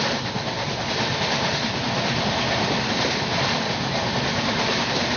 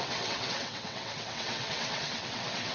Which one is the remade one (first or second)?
second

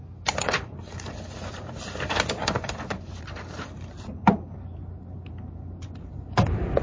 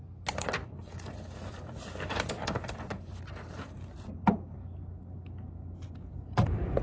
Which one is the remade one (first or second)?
first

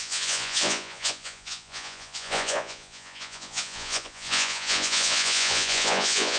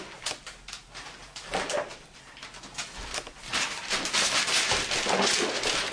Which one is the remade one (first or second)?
first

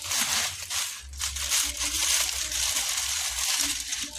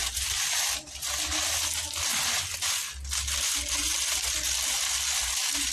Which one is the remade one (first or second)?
first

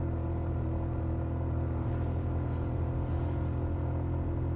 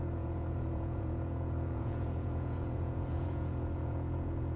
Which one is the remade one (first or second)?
second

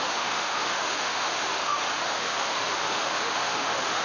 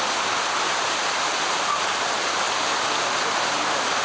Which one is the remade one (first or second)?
first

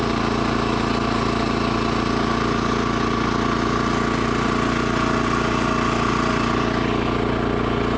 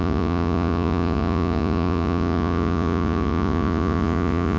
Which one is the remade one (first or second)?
second